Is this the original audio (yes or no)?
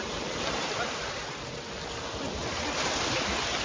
yes